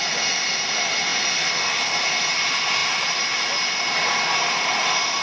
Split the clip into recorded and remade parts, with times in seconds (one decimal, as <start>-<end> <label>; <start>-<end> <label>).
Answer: 0.0-5.2 recorded